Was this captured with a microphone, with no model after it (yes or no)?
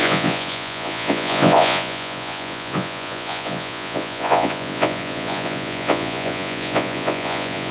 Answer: no